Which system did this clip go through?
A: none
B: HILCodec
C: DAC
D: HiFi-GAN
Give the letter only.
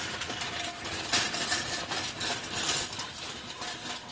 A